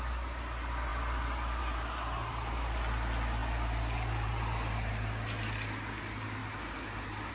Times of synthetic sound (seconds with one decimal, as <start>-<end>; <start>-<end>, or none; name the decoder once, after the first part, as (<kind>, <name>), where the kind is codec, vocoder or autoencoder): none